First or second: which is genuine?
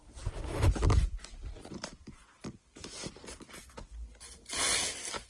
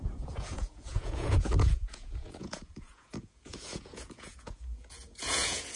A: first